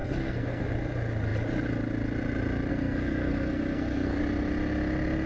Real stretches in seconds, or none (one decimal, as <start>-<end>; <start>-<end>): 0.6-2.7; 4.2-5.3